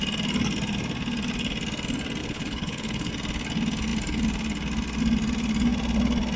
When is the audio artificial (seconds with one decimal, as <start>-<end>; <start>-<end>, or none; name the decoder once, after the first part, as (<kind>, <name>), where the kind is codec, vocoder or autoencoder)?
2.2-3.1 (codec, HILCodec)